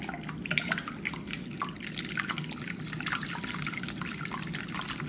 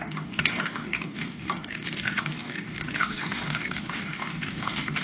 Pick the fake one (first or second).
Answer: second